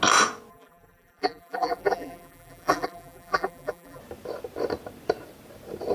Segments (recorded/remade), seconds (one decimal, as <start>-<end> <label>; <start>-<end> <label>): 0.0-0.5 recorded; 0.5-4.0 remade; 4.0-5.9 recorded